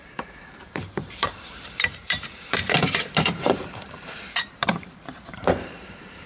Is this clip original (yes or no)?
no